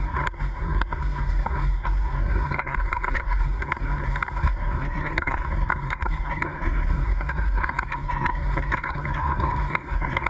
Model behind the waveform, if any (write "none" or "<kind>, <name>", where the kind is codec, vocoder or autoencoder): codec, SNAC